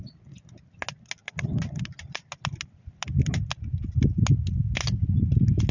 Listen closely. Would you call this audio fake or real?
real